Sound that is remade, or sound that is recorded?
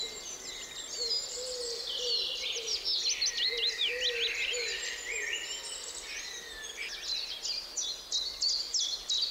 recorded